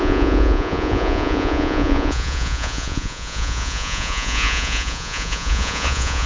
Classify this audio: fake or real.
fake